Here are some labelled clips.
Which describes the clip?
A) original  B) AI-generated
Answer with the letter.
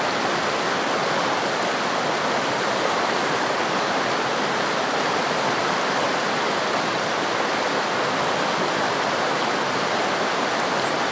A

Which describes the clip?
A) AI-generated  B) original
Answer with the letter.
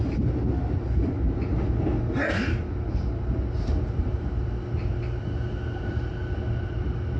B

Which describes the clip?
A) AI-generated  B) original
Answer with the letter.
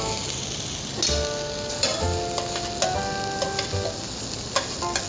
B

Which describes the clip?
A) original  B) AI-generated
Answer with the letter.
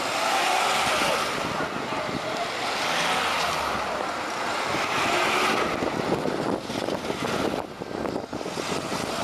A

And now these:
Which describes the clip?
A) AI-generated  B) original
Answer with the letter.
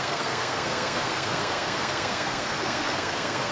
A